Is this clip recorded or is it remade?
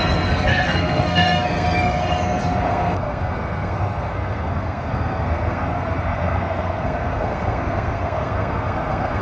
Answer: remade